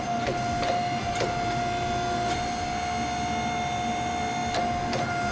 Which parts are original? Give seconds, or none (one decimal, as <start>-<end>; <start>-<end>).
0.0-5.3